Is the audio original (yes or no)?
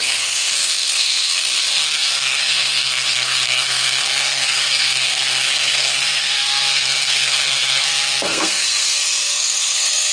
no